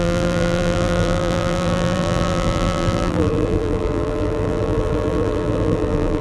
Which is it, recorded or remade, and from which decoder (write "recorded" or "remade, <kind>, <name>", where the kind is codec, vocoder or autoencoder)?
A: remade, vocoder, BigVGAN v2